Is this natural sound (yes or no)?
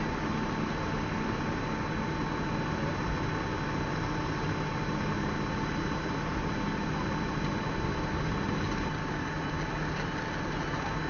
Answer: yes